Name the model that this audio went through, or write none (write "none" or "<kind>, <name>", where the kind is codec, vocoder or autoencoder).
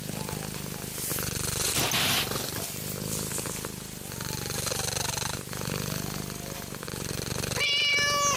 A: none